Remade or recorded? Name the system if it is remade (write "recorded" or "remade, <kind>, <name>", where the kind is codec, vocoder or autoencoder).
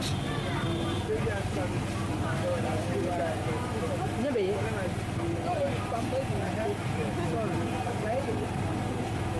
recorded